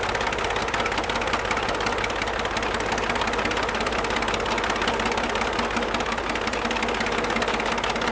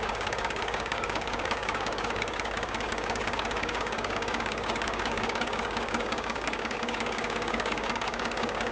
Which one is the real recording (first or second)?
first